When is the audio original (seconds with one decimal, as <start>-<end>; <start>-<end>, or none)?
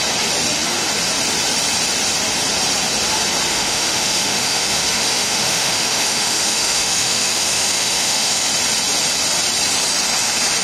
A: 0.0-3.5; 8.5-10.6